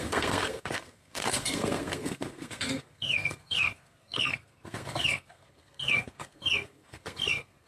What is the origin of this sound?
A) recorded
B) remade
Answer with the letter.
B